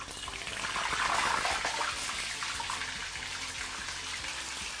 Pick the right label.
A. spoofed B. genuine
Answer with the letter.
B